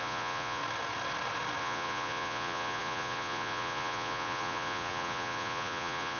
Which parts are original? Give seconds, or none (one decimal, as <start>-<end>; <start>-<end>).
0.6-1.6